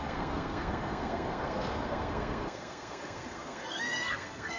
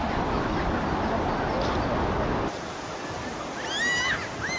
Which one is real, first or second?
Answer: second